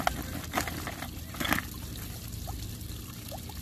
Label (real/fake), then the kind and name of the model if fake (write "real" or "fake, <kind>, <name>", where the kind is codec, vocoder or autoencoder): real